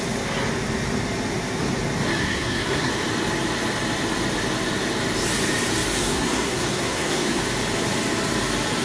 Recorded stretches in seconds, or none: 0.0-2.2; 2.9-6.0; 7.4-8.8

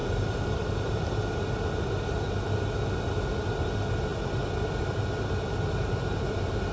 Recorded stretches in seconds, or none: 1.4-6.7

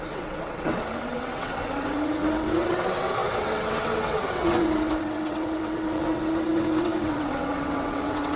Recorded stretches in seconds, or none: none

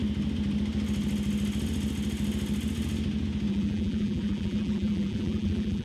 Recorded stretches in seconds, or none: 0.0-3.5

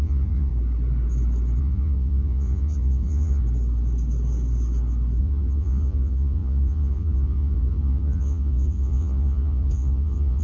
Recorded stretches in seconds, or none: 0.5-1.6; 3.4-5.2